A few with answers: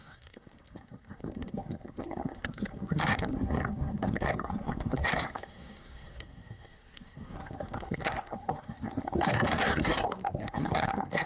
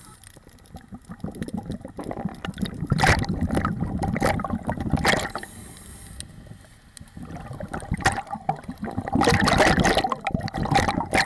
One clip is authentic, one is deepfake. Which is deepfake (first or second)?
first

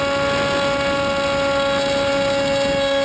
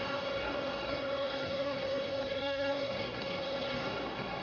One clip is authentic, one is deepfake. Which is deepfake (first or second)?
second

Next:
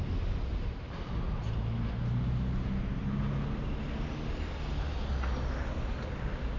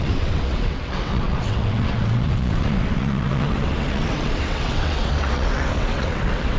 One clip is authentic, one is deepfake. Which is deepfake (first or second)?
second